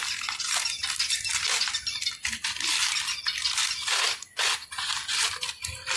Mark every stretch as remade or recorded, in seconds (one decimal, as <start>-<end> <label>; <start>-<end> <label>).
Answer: 0.0-2.2 recorded; 2.2-6.0 remade